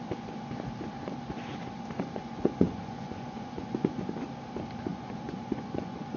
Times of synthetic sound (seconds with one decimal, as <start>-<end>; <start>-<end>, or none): 2.2-4.1; 4.9-6.2